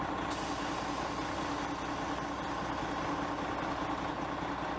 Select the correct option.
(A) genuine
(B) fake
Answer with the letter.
A